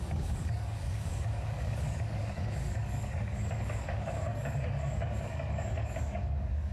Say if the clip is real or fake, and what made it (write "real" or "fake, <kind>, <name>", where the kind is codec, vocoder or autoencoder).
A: fake, codec, DAC